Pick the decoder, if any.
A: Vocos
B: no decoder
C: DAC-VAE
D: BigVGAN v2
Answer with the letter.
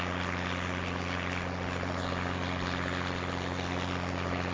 B